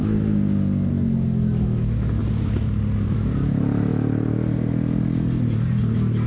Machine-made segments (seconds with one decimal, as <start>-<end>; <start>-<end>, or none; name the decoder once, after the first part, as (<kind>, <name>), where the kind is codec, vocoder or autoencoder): 2.2-2.8 (vocoder, BigVGAN v2)